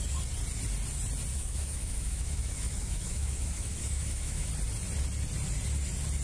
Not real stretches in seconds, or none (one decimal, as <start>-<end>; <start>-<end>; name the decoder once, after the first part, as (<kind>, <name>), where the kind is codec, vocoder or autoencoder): 1.3-4.5 (autoencoder, DAC-VAE)